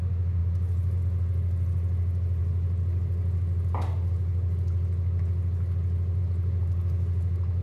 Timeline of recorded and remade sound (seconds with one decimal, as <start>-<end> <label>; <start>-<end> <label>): 0.0-7.6 recorded

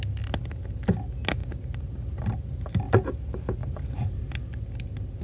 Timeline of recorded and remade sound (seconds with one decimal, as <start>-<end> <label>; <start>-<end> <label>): 0.0-3.6 recorded; 3.6-4.2 remade; 4.2-5.2 recorded

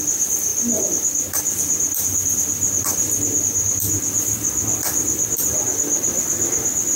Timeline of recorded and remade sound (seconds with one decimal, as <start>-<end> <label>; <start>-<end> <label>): 0.0-7.0 recorded

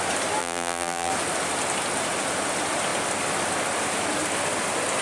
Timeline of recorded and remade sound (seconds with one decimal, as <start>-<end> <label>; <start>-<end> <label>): 0.0-0.4 recorded; 0.4-1.1 remade; 1.1-5.0 recorded

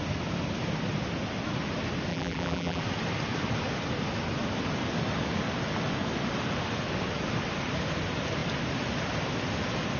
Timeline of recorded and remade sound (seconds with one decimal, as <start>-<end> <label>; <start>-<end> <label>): 0.0-2.1 recorded; 2.1-2.8 remade; 2.8-10.0 recorded

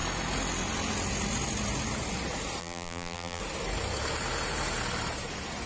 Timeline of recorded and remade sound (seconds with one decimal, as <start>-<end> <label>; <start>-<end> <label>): 0.0-2.6 recorded; 2.6-3.4 remade; 3.4-5.7 recorded